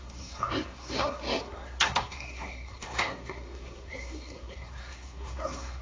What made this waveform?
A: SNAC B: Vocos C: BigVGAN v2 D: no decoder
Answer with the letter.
A